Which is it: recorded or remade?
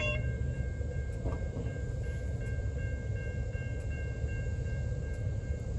remade